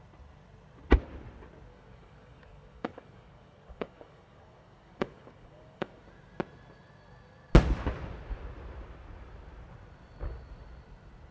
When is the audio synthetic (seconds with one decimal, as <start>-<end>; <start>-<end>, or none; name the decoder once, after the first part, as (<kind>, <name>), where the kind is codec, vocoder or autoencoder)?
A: 1.7-6.0 (codec, DAC)